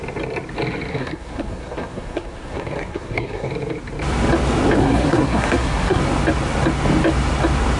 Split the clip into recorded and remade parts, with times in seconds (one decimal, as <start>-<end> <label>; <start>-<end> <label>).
0.0-0.9 recorded; 0.9-3.5 remade; 3.5-4.8 recorded; 4.8-6.0 remade; 6.0-7.8 recorded